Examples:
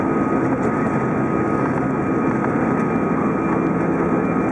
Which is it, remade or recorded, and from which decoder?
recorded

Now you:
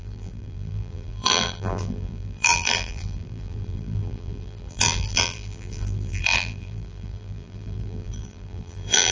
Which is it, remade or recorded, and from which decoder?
remade, vocoder, BigVGAN v2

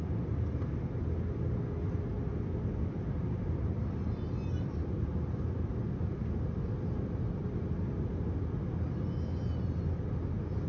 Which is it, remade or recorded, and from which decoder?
recorded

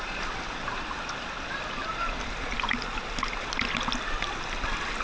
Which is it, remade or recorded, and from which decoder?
recorded